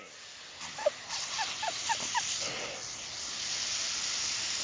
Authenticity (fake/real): real